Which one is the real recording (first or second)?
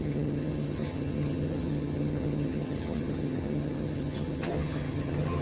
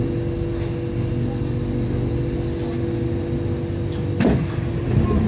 second